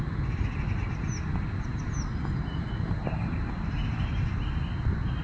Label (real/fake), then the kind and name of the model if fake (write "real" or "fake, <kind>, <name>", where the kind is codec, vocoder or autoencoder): real